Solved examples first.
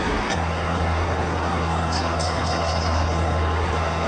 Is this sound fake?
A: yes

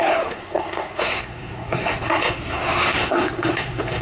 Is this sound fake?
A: yes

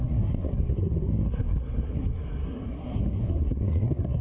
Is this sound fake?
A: yes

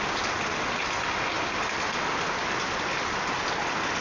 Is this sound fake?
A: no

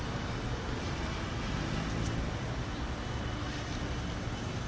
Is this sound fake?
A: no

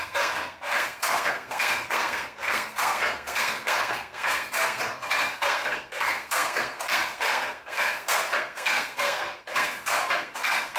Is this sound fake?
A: yes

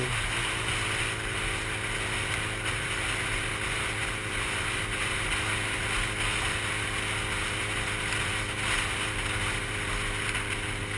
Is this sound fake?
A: no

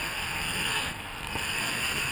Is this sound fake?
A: yes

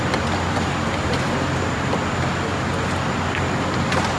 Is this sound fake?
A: no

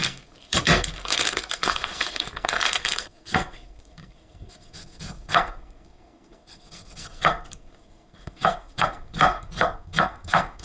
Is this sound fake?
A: yes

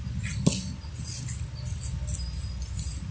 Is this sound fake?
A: no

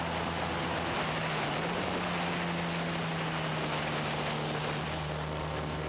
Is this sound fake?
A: no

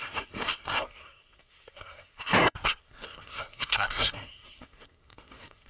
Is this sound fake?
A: yes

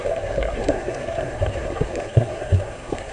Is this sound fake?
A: yes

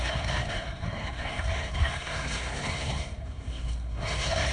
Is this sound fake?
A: yes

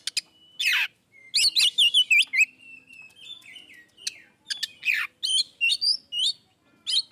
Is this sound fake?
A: no